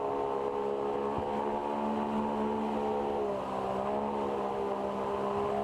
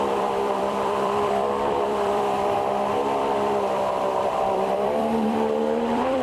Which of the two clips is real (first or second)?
first